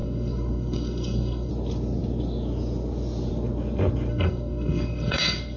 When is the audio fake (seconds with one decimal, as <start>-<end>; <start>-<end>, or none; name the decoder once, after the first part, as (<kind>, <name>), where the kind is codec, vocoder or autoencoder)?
0.0-1.5 (codec, SNAC); 4.1-5.6